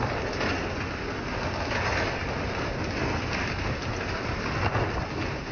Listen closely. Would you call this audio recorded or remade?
recorded